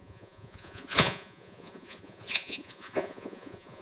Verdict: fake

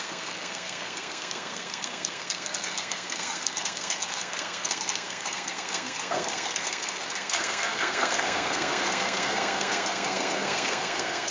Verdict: fake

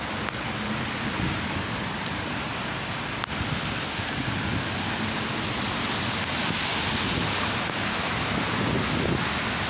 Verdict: real